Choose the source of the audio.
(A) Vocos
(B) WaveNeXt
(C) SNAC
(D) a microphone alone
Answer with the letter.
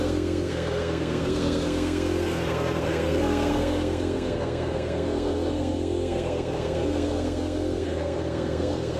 C